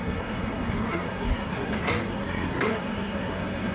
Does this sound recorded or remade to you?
remade